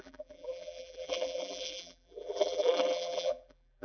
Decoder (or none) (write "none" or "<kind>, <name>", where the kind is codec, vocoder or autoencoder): vocoder, BigVGAN v2